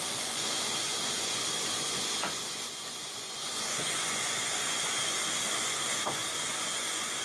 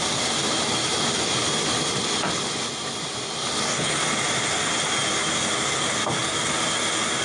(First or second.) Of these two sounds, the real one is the second